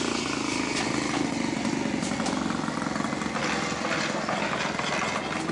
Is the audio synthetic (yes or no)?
no